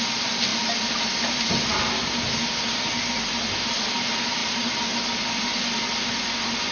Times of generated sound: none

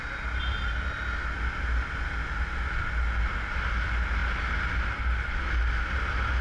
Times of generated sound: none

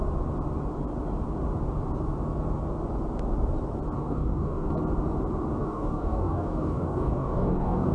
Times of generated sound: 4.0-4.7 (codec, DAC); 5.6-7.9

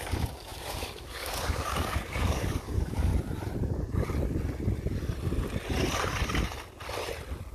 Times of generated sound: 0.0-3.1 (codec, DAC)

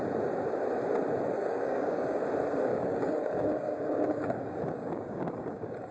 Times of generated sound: 1.4-2.2 (codec, DAC); 2.7-5.9